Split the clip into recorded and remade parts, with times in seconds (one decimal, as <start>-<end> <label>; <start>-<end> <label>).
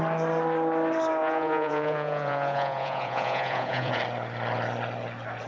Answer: 0.0-1.2 recorded; 1.2-4.0 remade; 4.0-5.5 recorded